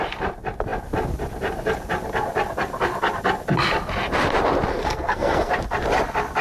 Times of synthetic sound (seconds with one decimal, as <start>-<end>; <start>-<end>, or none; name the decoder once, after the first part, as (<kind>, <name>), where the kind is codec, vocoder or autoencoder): 4.7-5.5 (codec, SNAC)